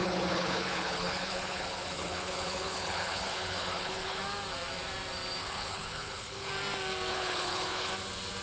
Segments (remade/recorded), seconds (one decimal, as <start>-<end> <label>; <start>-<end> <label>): 0.0-4.2 remade; 4.2-5.4 recorded; 5.4-6.5 remade; 6.5-7.1 recorded; 7.1-7.9 remade; 7.9-8.4 recorded